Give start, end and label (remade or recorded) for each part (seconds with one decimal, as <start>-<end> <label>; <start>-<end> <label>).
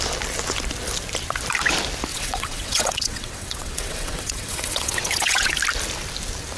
0.0-2.1 recorded; 2.1-5.5 remade; 5.5-6.6 recorded